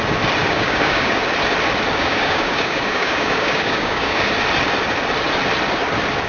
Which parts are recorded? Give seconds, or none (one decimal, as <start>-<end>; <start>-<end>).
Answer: 0.0-0.4; 1.2-2.0; 4.3-6.3